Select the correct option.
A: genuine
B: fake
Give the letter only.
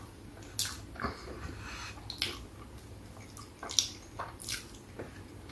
A